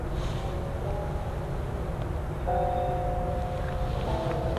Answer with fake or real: real